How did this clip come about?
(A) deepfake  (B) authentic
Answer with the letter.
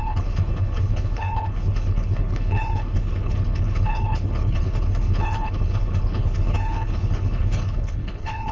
A